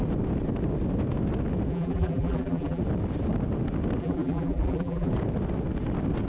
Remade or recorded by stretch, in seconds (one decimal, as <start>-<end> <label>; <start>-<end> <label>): 0.0-1.7 recorded; 1.7-2.8 remade; 2.8-4.0 recorded; 4.0-5.1 remade; 5.1-6.3 recorded